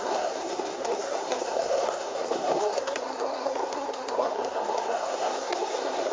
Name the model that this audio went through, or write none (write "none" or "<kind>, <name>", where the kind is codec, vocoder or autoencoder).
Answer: codec, SNAC